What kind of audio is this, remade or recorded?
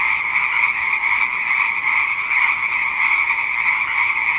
recorded